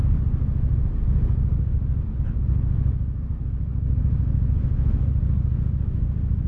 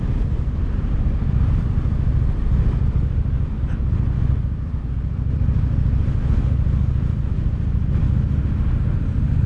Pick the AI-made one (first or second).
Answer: second